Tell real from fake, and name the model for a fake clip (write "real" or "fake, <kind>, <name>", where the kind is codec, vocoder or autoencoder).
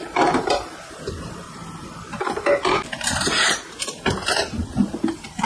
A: fake, vocoder, BigVGAN v2